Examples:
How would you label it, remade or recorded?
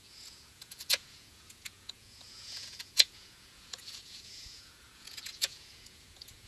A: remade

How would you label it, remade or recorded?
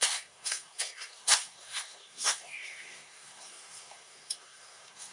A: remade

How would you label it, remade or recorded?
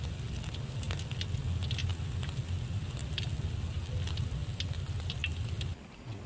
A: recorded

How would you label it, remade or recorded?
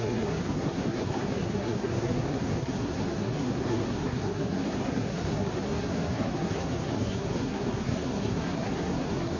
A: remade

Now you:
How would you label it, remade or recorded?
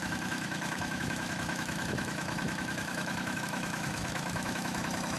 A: remade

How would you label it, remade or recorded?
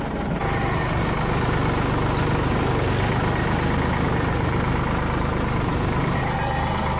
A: recorded